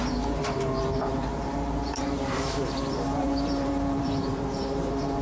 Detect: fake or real fake